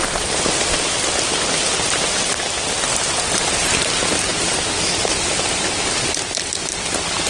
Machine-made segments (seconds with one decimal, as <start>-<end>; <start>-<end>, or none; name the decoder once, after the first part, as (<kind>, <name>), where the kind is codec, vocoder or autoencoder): none